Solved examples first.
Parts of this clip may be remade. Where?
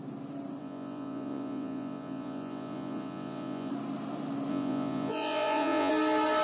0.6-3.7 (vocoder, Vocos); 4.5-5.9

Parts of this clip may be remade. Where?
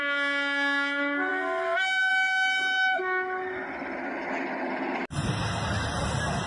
none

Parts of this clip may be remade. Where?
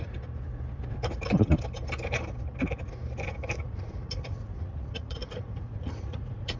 3.6-6.6 (vocoder, Vocos)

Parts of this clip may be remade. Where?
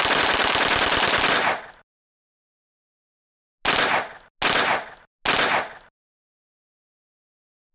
none